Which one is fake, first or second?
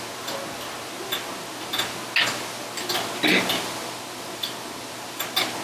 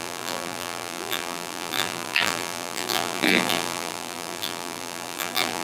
second